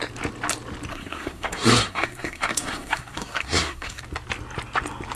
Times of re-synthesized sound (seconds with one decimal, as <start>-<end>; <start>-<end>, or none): 0.9-4.0